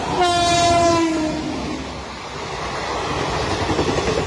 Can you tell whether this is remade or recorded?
recorded